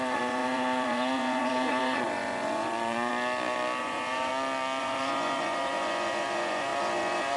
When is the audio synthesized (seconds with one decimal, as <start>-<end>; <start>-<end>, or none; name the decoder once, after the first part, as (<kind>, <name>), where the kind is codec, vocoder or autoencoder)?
0.0-3.1 (vocoder, Vocos); 3.8-4.3; 4.8-7.4